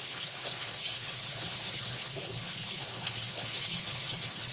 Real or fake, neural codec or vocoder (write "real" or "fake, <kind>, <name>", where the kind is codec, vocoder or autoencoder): fake, codec, HILCodec